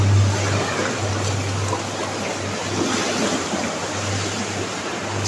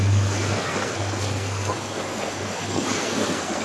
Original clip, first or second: first